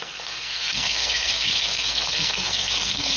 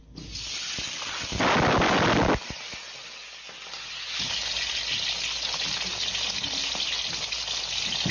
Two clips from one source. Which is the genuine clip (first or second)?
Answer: second